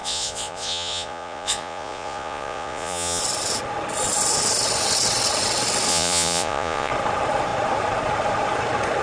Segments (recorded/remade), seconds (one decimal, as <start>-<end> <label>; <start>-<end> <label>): 0.0-3.2 remade; 3.2-5.9 recorded; 5.9-6.9 remade; 6.9-9.0 recorded